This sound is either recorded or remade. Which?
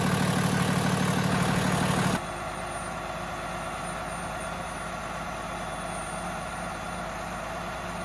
recorded